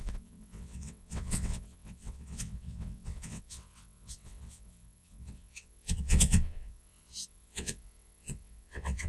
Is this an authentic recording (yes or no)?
no